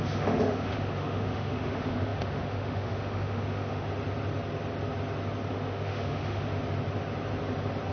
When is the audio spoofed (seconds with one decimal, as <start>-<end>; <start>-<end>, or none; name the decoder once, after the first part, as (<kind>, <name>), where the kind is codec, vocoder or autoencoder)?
0.0-3.9 (autoencoder, DAC-VAE); 5.5-6.5